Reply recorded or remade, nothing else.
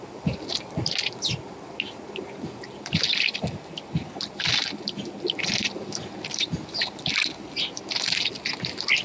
recorded